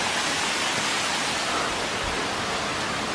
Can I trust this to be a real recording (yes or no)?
yes